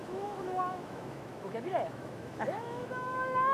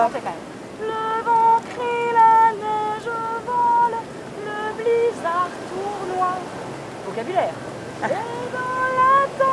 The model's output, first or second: first